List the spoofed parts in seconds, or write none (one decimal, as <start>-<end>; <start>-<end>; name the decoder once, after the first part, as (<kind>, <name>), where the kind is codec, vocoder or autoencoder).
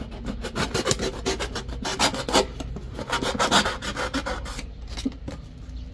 none